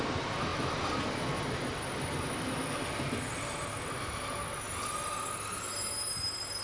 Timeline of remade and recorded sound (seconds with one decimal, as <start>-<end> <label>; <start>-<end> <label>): 0.0-6.6 recorded